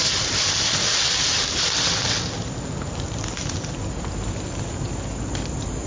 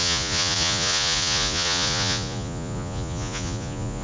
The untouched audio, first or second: first